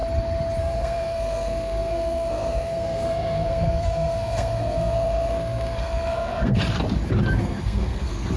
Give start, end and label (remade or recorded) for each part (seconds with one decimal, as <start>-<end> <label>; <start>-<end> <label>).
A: 0.0-0.6 recorded; 0.6-6.6 remade; 6.6-7.4 recorded; 7.4-8.4 remade